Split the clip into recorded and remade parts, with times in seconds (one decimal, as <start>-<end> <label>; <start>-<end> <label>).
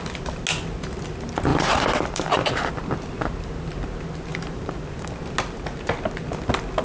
0.0-1.5 recorded; 1.5-2.7 remade; 2.7-4.3 recorded; 4.3-5.1 remade; 5.1-6.8 recorded